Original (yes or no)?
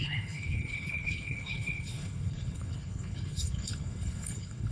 no